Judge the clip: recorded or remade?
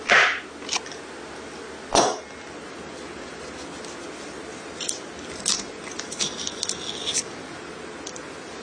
recorded